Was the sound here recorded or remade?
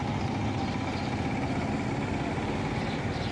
recorded